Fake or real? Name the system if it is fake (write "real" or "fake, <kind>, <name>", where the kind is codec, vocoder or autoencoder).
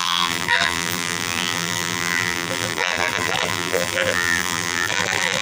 fake, vocoder, BigVGAN v2